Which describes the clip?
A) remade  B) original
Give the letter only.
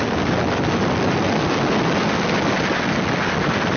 B